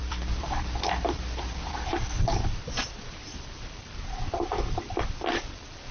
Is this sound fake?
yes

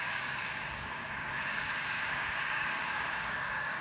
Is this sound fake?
yes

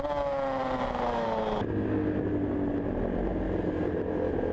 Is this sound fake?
no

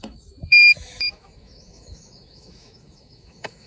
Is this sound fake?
yes